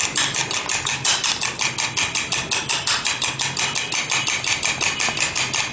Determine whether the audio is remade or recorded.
recorded